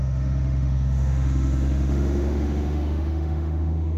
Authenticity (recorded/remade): remade